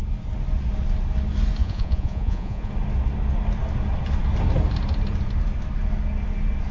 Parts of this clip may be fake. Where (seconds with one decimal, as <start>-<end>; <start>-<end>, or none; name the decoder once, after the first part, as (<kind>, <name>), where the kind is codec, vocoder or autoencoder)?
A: 1.6-2.7 (vocoder, Vocos)